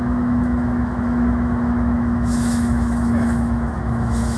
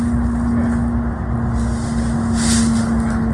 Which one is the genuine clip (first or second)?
second